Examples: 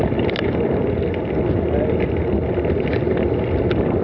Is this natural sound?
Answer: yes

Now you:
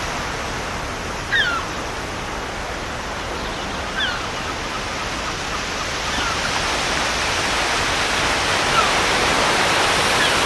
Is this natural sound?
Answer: yes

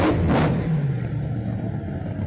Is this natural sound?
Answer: yes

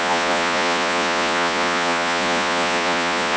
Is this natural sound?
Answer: no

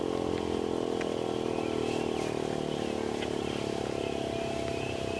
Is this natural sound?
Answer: yes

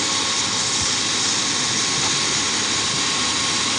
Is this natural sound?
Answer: yes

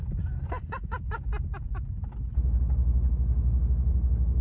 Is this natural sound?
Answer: yes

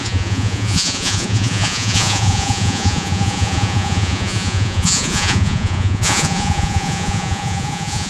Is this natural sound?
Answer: no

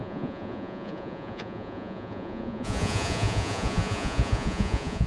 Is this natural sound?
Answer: no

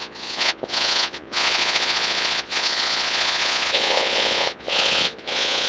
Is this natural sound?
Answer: no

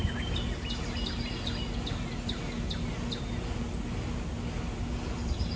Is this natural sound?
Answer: yes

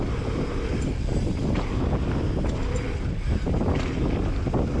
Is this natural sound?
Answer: yes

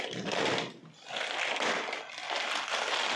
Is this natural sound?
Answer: yes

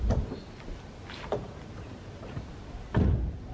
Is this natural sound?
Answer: yes